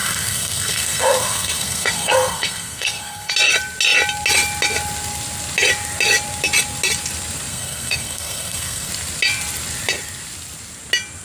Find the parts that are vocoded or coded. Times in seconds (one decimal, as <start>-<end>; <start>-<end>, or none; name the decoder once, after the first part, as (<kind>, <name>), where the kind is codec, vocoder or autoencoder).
0.0-3.3 (codec, SNAC); 7.5-8.9